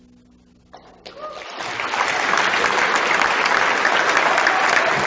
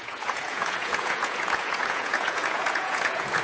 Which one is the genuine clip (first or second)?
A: first